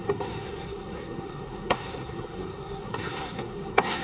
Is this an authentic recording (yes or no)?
no